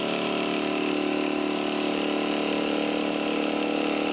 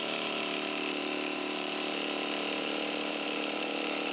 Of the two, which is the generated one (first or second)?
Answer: second